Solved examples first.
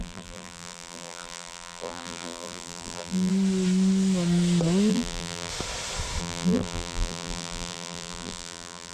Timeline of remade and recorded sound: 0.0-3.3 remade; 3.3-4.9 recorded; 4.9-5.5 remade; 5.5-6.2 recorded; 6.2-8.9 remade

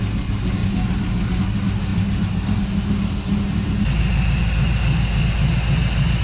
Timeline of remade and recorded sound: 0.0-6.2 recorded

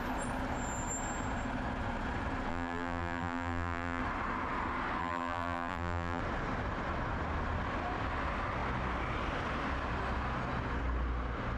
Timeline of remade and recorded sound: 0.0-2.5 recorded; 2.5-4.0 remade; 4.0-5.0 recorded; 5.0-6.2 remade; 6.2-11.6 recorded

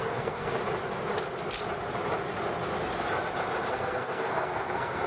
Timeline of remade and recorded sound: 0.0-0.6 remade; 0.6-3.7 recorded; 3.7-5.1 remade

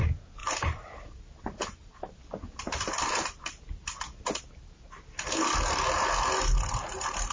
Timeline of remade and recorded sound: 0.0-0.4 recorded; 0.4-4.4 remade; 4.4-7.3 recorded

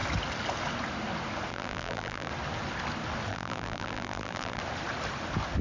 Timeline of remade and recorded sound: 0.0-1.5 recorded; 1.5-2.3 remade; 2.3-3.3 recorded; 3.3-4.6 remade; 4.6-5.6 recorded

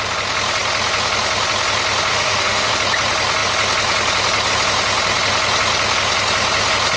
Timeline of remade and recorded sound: 0.0-2.1 recorded; 2.1-2.7 remade; 2.7-7.0 recorded

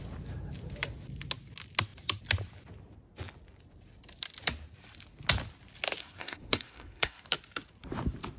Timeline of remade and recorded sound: 0.0-6.0 recorded; 6.0-7.2 remade; 7.2-8.4 recorded